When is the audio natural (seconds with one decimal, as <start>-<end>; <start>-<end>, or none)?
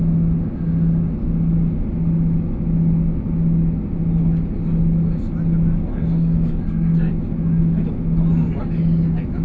0.0-5.9; 7.1-9.4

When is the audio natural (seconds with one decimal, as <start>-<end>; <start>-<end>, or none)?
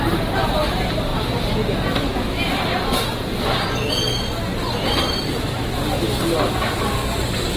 0.0-7.6